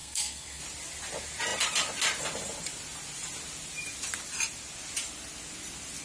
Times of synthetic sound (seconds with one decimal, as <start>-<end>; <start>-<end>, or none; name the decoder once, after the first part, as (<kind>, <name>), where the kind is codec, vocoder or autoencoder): 0.0-0.6 (codec, SNAC)